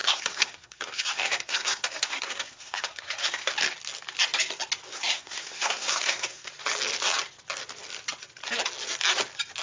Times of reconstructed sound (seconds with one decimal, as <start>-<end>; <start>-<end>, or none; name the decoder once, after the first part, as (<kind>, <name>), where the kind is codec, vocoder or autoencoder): 0.0-3.5 (codec, SNAC); 4.9-6.5